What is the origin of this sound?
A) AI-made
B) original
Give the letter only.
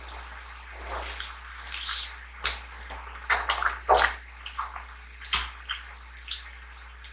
B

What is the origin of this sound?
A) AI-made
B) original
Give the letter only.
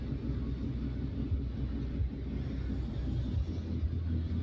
B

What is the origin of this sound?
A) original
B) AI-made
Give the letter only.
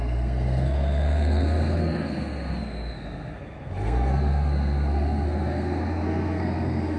B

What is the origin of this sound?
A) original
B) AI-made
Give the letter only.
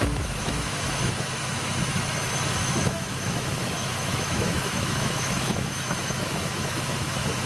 B